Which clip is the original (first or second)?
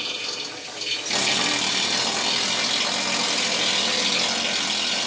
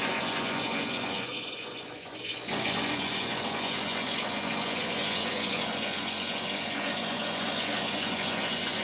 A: first